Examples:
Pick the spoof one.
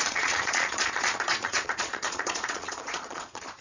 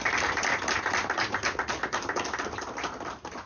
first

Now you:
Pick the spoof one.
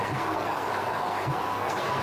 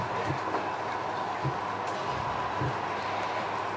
first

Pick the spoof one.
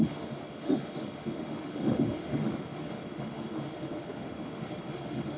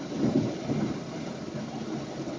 first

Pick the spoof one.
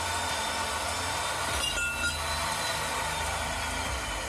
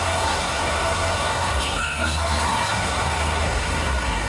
second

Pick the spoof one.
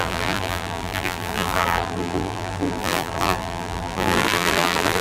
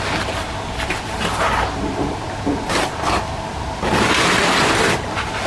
first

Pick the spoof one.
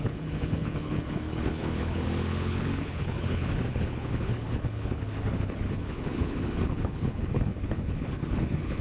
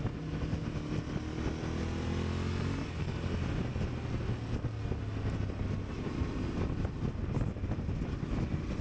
first